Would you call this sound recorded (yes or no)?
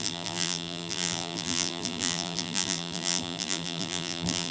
no